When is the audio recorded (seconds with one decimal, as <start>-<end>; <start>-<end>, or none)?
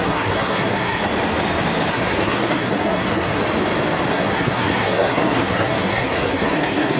1.0-1.9; 3.4-4.1